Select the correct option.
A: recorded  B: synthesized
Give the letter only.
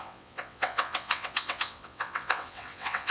B